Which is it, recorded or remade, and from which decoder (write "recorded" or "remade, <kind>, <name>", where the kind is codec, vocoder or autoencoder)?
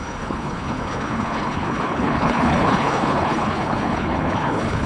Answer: remade, codec, HILCodec